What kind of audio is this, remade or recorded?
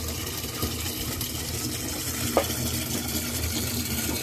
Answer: recorded